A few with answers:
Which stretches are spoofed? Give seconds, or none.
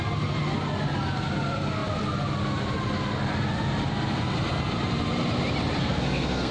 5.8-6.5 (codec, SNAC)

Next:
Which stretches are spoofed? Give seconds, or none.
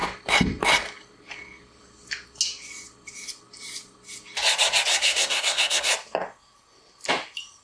4.9-5.9 (codec, SNAC)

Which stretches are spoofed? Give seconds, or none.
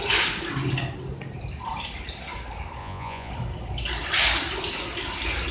2.8-3.3 (vocoder, Vocos)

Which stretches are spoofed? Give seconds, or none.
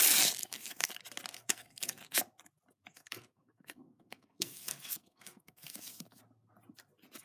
0.4-0.9 (codec, SNAC); 1.3-2.2; 2.9-6.2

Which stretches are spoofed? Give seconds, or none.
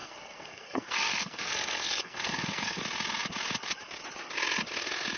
0.0-2.8 (codec, SNAC)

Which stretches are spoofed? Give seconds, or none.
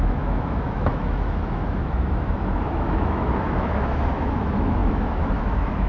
0.0-5.9 (autoencoder, DAC-VAE)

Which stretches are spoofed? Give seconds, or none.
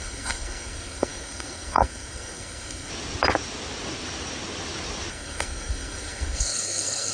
0.0-2.9 (codec, SNAC); 5.1-7.1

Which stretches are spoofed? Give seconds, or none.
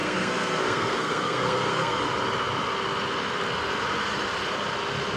0.0-2.0 (codec, SNAC)